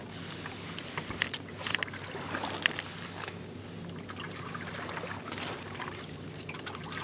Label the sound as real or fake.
real